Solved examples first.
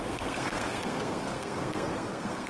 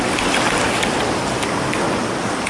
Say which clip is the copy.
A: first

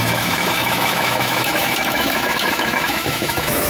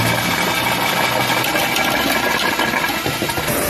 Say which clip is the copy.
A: first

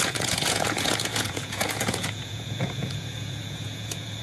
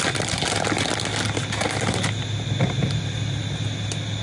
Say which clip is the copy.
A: first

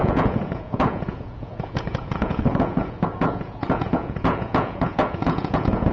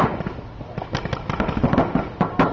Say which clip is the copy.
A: first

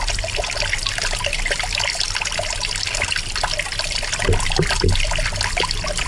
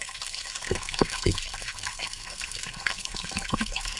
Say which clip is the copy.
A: second